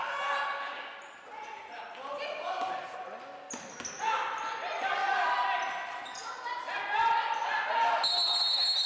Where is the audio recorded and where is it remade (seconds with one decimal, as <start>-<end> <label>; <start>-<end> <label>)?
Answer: 0.0-8.9 recorded

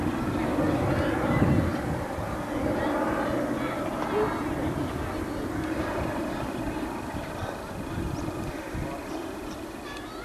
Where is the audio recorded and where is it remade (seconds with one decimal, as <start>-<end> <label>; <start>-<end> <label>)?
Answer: 0.0-10.2 recorded